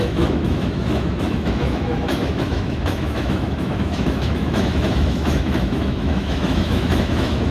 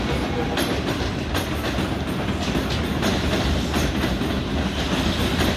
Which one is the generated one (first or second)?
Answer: first